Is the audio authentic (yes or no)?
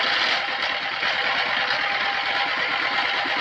yes